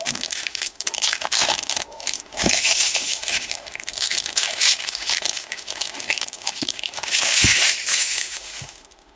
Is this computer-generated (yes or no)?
yes